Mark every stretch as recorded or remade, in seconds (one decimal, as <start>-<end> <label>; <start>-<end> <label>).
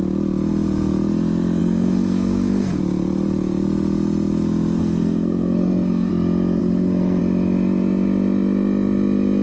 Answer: 0.0-1.6 recorded; 1.6-2.8 remade; 2.8-4.8 recorded; 4.8-6.1 remade; 6.1-6.6 recorded; 6.6-7.2 remade; 7.2-9.4 recorded